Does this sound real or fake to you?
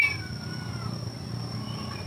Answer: real